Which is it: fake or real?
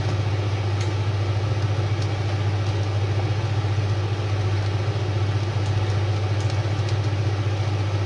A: real